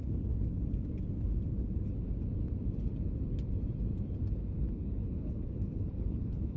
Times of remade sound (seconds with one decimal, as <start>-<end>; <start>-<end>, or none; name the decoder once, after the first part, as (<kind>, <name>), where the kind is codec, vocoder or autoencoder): 0.0-0.6 (codec, HILCodec); 4.3-6.6